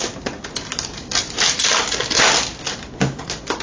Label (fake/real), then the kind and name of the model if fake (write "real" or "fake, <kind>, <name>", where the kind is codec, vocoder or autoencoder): real